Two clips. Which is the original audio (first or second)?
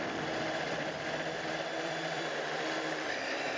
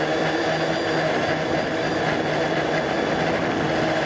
second